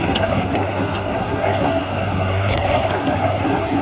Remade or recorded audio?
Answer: remade